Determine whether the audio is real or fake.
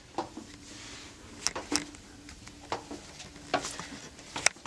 real